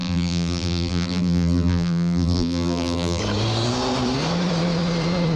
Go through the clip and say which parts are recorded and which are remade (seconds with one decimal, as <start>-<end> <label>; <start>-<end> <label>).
0.0-3.2 remade; 3.2-5.4 recorded